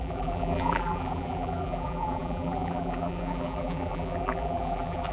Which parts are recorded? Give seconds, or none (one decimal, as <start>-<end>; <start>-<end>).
none